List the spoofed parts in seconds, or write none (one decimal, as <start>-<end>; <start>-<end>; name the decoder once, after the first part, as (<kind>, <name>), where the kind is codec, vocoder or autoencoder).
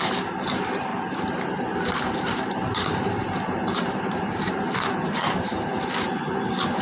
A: 0.9-4.5 (vocoder, BigVGAN v2)